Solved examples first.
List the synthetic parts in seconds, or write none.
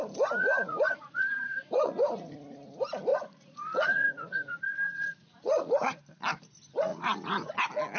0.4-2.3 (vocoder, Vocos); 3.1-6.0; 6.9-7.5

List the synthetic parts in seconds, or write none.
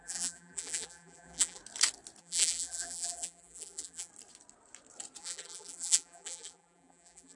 0.0-1.6 (vocoder, BigVGAN v2); 2.2-4.1; 5.2-7.4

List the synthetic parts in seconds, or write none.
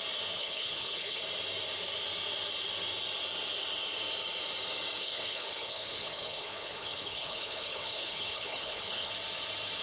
0.4-1.2 (codec, HILCodec); 5.0-9.1